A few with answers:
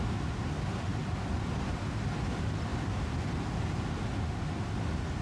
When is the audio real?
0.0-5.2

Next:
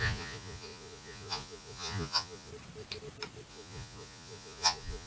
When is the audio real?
2.5-3.5

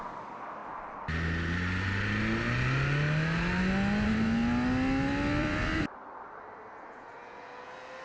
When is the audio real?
0.0-5.4; 6.5-8.0

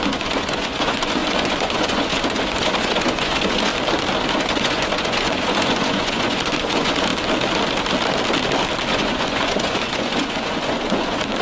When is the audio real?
3.7-4.4; 7.1-8.9

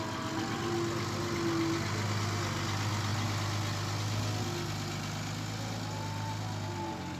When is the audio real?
0.0-7.2

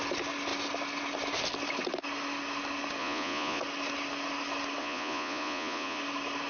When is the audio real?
0.0-3.0; 3.6-4.8; 6.0-6.5

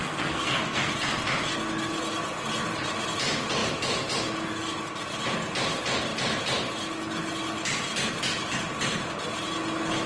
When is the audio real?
0.9-10.1